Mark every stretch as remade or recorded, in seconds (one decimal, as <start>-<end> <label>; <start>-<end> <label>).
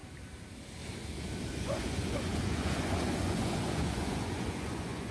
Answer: 0.0-1.5 recorded; 1.5-5.1 remade